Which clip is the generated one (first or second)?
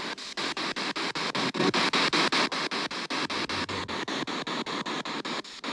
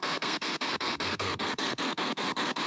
second